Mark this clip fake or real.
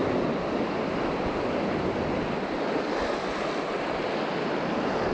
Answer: real